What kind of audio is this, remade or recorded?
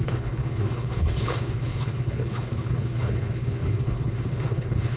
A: remade